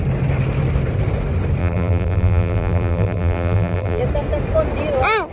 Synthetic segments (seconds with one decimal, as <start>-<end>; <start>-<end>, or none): 1.6-4.0